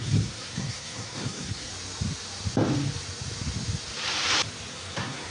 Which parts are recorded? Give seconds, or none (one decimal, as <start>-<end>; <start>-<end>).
1.7-4.7